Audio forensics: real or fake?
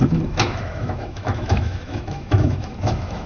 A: fake